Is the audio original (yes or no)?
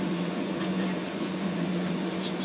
no